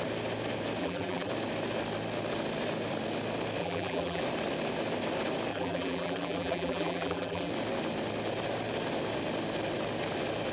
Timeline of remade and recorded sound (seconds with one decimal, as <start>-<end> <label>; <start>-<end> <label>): 0.0-0.8 recorded; 0.8-1.3 remade; 1.3-3.6 recorded; 3.6-4.2 remade; 4.2-5.5 recorded; 5.5-7.5 remade; 7.5-10.5 recorded